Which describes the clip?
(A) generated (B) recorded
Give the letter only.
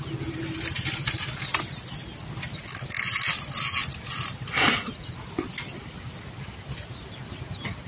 B